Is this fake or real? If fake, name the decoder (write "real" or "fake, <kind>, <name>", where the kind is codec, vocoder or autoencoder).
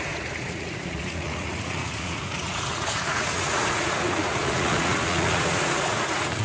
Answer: fake, vocoder, Vocos